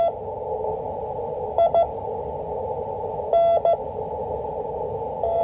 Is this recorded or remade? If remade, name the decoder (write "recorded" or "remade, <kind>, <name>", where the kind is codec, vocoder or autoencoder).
recorded